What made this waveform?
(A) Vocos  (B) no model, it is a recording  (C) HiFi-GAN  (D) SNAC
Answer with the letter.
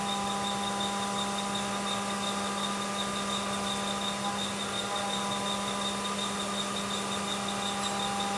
B